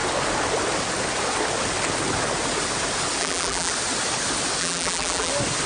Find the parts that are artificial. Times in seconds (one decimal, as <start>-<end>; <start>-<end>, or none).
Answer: 3.2-3.7; 4.6-5.3